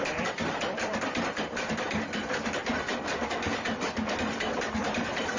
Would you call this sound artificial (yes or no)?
yes